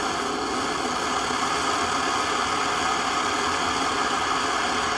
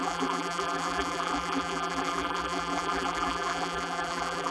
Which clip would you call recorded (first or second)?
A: first